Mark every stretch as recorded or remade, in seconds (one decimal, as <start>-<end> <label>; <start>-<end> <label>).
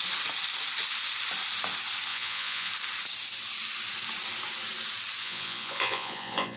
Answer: 0.0-2.1 recorded; 2.1-2.7 remade; 2.7-5.2 recorded; 5.2-6.6 remade